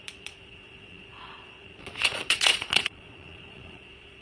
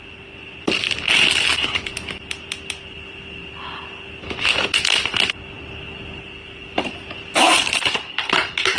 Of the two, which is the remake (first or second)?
first